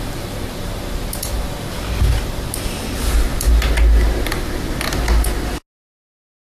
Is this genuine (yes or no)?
yes